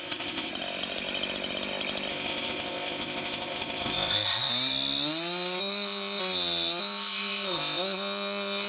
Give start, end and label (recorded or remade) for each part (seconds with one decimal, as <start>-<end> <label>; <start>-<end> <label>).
0.0-0.5 remade; 0.5-2.1 recorded; 2.1-4.5 remade; 4.5-5.6 recorded; 5.6-6.2 remade; 6.2-6.8 recorded; 6.8-8.7 remade